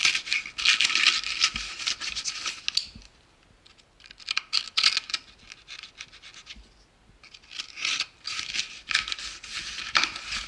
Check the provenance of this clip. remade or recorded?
recorded